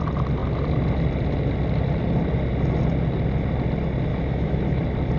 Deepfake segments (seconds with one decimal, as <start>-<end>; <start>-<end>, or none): 4.1-4.8

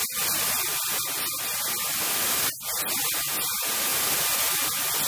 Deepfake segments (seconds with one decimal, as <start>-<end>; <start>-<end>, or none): none